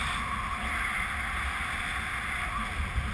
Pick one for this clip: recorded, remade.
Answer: recorded